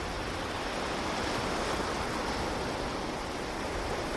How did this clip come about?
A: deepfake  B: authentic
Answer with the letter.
B